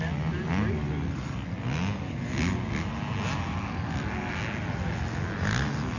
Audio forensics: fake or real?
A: real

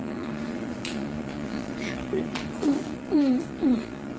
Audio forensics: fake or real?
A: fake